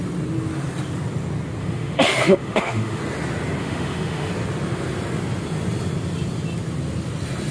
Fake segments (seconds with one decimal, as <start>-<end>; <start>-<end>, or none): 1.6-3.0; 3.6-4.3